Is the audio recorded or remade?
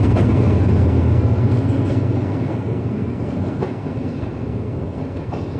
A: remade